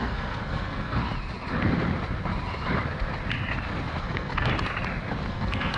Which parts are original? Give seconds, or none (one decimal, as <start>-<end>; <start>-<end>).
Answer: 1.0-4.0; 4.5-5.3